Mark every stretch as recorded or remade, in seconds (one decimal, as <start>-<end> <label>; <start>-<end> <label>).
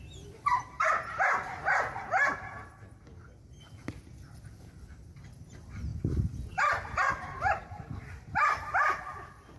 0.0-9.6 recorded